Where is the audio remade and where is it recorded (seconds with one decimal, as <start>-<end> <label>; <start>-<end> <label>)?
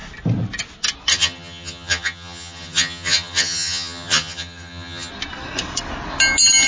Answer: 0.0-1.1 recorded; 1.1-5.1 remade; 5.1-6.7 recorded